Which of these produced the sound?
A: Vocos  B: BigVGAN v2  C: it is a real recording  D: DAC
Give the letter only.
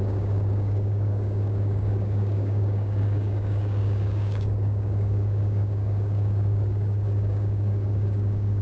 D